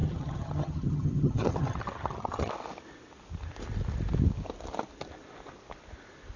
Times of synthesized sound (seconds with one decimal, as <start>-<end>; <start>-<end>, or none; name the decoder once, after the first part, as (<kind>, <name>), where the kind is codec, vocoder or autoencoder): 0.0-2.5 (vocoder, HiFi-GAN)